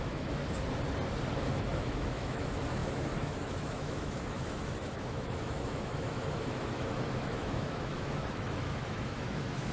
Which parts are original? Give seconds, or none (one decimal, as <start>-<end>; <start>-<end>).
0.4-1.5